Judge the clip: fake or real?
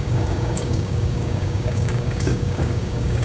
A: fake